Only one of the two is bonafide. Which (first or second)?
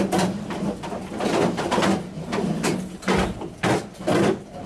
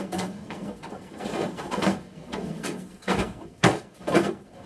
first